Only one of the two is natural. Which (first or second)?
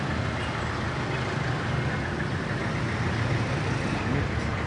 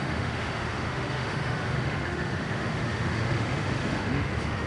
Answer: first